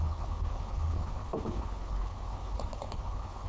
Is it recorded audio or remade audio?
remade